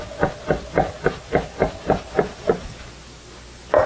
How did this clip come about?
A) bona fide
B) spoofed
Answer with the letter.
A